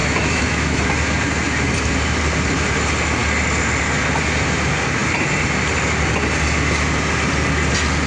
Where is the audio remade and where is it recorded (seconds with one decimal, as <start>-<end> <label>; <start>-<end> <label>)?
0.0-0.8 remade; 0.8-8.1 recorded